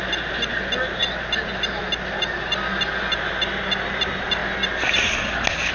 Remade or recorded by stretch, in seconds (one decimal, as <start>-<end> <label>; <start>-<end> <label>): 0.0-5.7 recorded